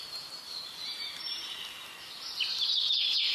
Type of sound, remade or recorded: recorded